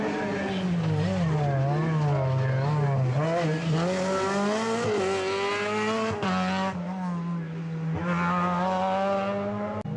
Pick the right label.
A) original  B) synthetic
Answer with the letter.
A